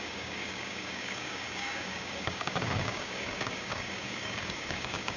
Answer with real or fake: fake